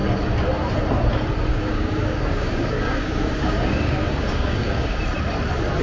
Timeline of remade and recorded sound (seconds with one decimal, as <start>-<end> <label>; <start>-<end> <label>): 0.0-1.5 recorded; 1.5-5.0 remade; 5.0-5.8 recorded